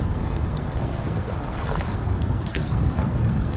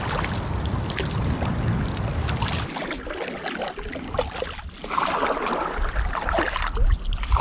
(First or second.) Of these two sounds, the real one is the second